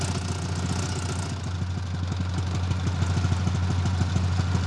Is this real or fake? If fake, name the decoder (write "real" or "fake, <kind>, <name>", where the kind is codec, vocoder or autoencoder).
real